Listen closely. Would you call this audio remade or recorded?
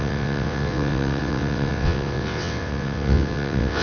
remade